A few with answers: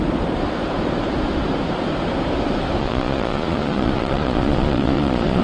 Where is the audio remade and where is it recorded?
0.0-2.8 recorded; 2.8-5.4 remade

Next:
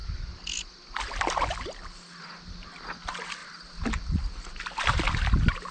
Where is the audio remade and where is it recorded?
0.0-5.7 recorded

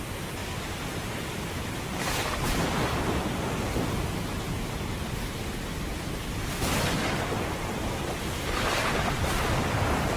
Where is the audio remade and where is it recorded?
0.0-0.4 recorded; 0.4-2.5 remade; 2.5-10.2 recorded